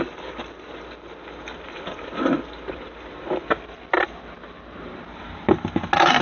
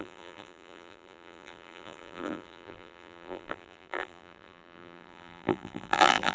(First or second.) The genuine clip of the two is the first